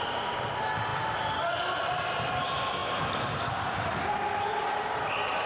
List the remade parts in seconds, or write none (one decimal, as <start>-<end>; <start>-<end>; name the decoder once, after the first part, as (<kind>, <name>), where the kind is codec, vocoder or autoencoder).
none